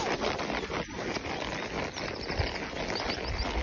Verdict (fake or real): real